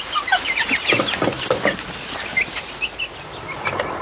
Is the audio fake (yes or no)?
no